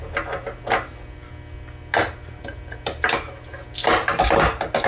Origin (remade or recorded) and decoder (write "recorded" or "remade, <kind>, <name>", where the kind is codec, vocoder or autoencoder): recorded